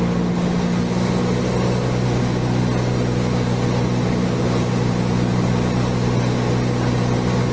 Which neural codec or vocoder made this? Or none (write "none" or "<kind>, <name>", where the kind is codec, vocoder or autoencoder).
none